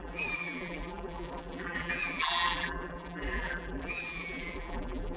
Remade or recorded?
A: remade